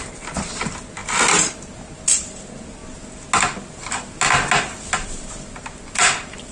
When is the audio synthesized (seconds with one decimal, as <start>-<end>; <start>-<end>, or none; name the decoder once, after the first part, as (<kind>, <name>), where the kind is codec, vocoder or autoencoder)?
0.0-1.0 (vocoder, BigVGAN v2); 2.1-2.8; 4.6-6.5